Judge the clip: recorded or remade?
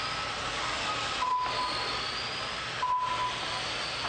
recorded